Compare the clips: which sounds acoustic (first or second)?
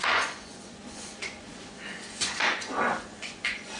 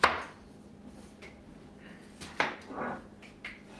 second